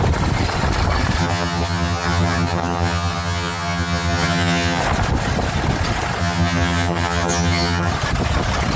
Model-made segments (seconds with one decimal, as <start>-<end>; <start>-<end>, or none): 1.2-4.8; 6.2-7.9